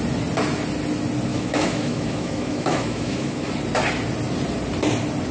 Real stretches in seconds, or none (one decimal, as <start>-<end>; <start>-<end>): 0.0-1.3; 3.5-5.3